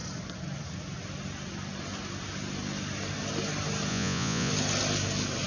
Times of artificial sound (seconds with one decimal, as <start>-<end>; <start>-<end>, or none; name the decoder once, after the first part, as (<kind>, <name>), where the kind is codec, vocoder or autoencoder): 3.9-4.5 (vocoder, Vocos)